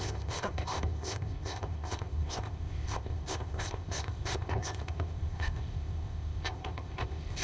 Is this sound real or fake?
fake